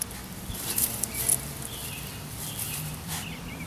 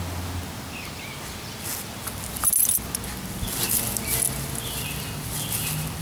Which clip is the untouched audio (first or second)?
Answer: second